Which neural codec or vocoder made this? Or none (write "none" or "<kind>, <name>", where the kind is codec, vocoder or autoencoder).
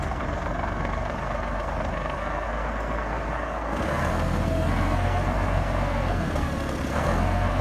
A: codec, SNAC